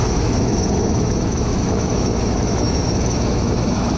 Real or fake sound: fake